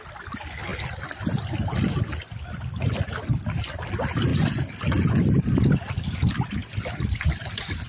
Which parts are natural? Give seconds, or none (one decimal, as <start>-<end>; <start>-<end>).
0.0-0.7; 2.7-4.3; 4.8-6.6; 7.3-7.9